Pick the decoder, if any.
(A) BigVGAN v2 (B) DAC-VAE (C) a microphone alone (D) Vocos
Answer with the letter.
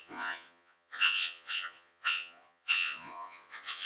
D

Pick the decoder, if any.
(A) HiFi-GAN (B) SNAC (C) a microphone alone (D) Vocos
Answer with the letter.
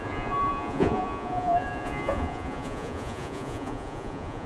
D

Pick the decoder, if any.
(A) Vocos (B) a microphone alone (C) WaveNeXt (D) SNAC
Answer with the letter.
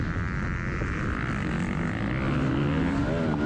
B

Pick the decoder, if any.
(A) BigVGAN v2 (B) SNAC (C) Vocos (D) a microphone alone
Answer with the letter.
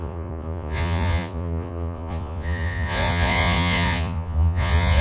C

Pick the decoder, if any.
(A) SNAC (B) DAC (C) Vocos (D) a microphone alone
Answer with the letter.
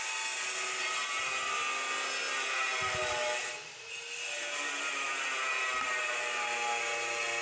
D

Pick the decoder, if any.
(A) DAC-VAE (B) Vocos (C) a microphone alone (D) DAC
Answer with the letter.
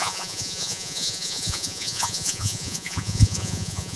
B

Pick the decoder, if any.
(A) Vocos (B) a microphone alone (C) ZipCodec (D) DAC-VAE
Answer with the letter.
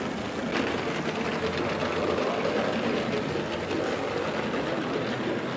B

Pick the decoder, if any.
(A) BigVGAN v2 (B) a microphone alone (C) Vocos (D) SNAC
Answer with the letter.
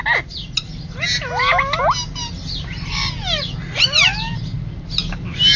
B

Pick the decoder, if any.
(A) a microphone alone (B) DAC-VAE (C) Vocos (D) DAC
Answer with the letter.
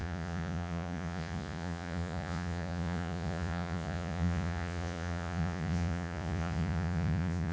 C